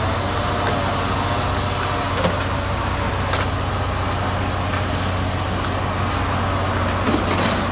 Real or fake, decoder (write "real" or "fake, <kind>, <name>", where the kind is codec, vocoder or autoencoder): real